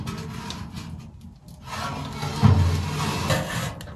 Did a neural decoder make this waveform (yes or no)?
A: no